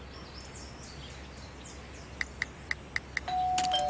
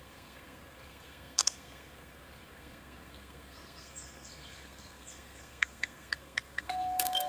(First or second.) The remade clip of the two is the second